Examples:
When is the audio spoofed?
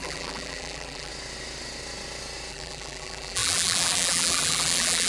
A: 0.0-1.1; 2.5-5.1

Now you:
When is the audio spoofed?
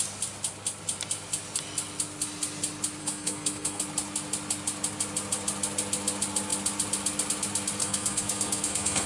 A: 3.0-3.8; 7.8-9.1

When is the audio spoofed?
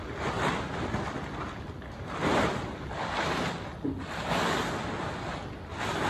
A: none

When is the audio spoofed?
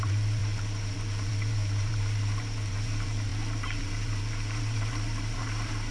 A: 0.0-5.9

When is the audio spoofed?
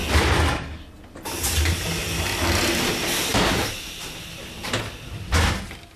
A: 3.3-4.8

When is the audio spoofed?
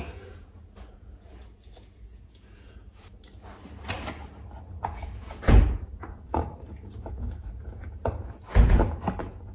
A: 0.0-3.1; 4.8-6.5; 7.1-9.5